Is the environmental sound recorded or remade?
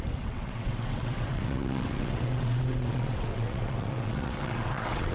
remade